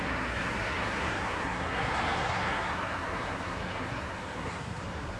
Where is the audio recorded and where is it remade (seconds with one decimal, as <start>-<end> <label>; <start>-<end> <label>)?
0.0-5.2 remade